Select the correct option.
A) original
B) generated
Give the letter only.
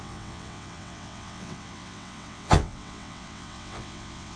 B